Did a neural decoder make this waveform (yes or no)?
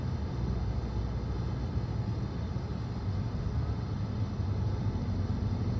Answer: no